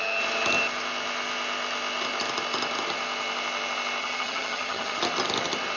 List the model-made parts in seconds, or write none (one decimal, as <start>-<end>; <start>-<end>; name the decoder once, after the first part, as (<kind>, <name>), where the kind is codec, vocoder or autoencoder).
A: 4.0-5.0 (vocoder, HiFi-GAN)

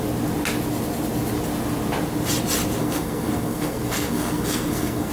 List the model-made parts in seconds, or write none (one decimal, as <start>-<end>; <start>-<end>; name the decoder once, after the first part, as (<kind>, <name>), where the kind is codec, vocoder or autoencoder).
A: 2.8-5.1 (codec, SNAC)

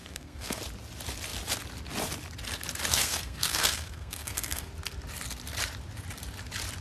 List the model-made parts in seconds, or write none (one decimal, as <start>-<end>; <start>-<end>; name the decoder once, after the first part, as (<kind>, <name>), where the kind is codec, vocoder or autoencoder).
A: 0.0-0.6 (codec, SNAC); 2.9-4.7

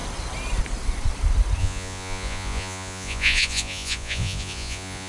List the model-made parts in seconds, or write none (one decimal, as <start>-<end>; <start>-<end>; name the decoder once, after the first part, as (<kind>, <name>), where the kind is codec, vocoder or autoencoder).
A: 1.6-5.1 (vocoder, Vocos)

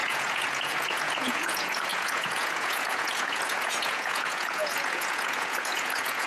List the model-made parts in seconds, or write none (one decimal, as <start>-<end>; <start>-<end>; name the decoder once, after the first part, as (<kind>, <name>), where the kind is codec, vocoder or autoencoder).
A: 0.0-6.3 (vocoder, Vocos)

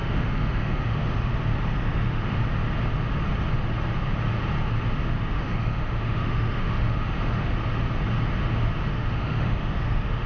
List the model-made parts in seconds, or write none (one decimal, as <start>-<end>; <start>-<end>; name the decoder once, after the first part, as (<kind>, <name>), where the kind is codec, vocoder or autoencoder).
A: 0.0-1.3 (autoencoder, DAC-VAE); 1.8-2.4; 5.2-7.5; 8.9-10.3

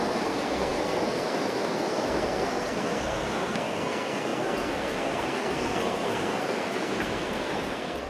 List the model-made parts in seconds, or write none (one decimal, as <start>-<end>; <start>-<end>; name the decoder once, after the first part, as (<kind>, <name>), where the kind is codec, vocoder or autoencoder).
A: 0.0-8.1 (codec, SNAC)